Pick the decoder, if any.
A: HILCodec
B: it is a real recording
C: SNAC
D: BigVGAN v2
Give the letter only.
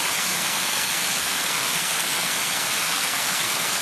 C